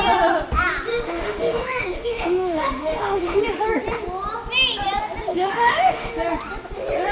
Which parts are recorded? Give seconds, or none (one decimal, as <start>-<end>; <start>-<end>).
0.0-0.9; 3.4-5.3; 6.1-7.1